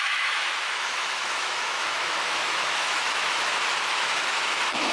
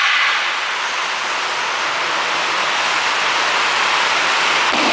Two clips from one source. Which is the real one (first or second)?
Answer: second